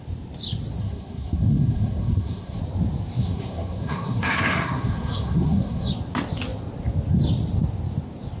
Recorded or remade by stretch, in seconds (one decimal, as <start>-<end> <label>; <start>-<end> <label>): 0.0-0.8 recorded; 0.8-2.6 remade; 2.6-3.2 recorded; 3.2-5.9 remade; 5.9-8.4 recorded